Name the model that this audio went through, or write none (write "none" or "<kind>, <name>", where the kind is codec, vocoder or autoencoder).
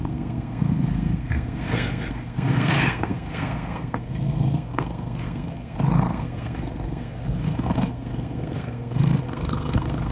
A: codec, SNAC